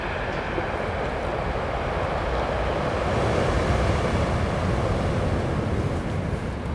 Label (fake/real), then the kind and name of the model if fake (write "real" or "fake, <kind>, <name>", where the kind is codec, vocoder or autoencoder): real